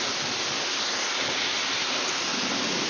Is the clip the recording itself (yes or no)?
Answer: yes